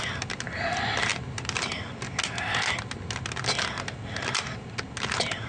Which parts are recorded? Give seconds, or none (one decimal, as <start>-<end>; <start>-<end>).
0.0-5.5